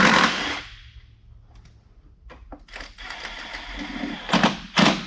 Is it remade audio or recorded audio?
recorded